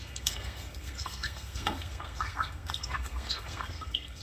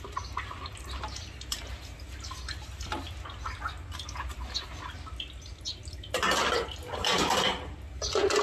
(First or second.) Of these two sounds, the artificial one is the first